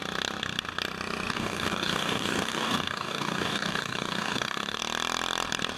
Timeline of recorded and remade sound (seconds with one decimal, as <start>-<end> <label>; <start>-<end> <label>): 0.0-1.3 recorded; 1.3-4.8 remade; 4.8-5.8 recorded